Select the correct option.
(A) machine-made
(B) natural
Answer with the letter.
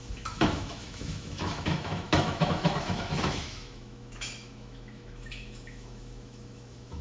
A